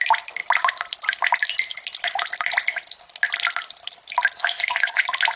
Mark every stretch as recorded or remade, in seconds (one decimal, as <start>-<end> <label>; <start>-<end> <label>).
0.0-4.4 recorded; 4.4-5.0 remade; 5.0-5.4 recorded